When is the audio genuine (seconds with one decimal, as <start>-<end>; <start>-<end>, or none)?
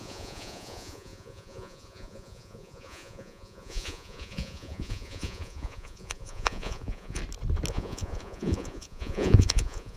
7.2-7.7